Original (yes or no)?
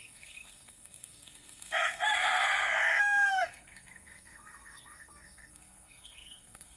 no